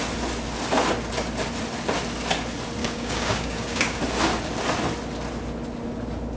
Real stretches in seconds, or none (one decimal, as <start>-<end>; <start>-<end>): 0.0-2.8; 4.0-6.4